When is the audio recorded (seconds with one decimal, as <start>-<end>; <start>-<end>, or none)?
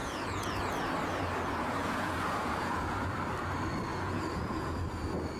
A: 0.7-1.8; 3.1-3.9; 5.0-5.4